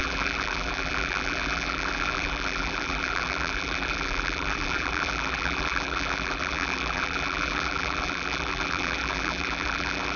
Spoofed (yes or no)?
yes